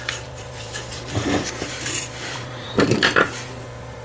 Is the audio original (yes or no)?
no